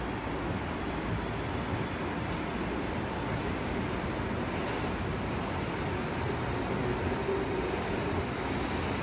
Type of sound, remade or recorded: recorded